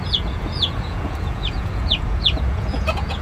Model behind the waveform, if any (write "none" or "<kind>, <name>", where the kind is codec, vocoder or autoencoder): vocoder, Vocos